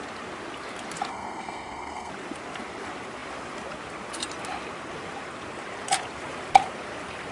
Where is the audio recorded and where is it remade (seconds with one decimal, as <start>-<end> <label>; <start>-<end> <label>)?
0.0-1.1 recorded; 1.1-2.1 remade; 2.1-7.3 recorded